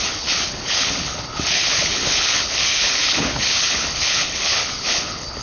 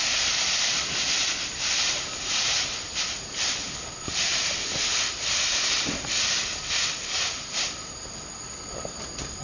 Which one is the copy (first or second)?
first